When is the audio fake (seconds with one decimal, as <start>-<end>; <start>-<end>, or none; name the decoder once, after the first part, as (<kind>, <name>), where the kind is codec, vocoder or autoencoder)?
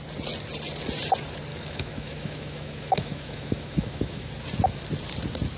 1.5-4.3 (autoencoder, DAC-VAE)